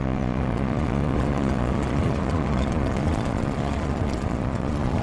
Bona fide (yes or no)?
no